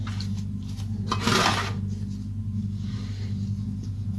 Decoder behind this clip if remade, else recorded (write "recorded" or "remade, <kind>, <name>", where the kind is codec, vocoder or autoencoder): recorded